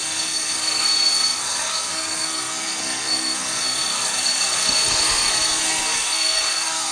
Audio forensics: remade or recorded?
remade